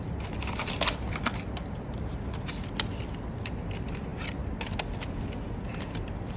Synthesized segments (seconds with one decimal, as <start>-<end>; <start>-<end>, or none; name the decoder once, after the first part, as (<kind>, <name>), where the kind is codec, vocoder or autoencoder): none